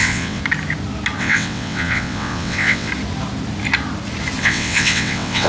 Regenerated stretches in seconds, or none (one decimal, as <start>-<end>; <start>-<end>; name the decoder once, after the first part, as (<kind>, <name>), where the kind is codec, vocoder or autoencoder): 0.0-0.4 (vocoder, WaveNeXt); 1.2-2.9; 4.4-5.5